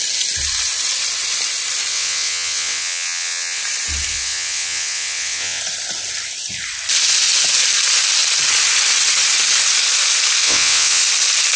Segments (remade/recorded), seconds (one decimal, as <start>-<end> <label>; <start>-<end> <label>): 0.0-1.9 recorded; 1.9-3.6 remade; 3.6-4.1 recorded; 4.1-5.6 remade; 5.6-10.4 recorded; 10.4-11.0 remade; 11.0-11.6 recorded